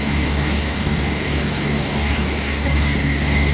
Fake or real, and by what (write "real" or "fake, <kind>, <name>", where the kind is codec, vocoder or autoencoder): fake, codec, DAC